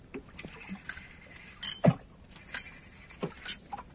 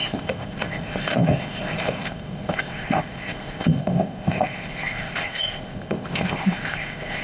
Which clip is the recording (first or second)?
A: first